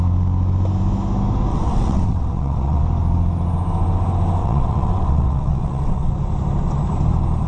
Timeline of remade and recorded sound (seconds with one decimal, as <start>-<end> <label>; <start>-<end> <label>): 0.0-1.5 recorded; 1.5-2.8 remade; 2.8-4.4 recorded; 4.4-6.1 remade; 6.1-7.5 recorded